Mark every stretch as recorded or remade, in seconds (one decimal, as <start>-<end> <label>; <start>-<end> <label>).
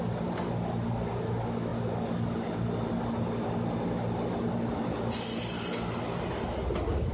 0.0-7.1 recorded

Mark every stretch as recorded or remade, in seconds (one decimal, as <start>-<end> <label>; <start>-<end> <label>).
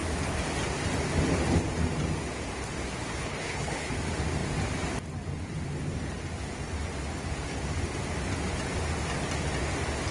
0.0-3.2 recorded; 3.2-3.9 remade; 3.9-10.1 recorded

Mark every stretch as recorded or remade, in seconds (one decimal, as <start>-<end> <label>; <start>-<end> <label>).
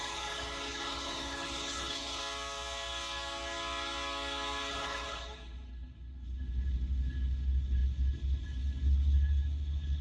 0.0-2.2 remade; 2.2-4.7 recorded; 4.7-10.0 remade